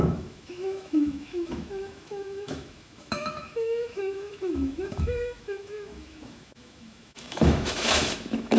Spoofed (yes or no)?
yes